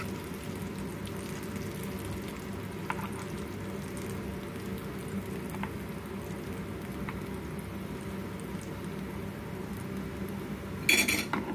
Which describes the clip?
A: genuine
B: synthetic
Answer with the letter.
A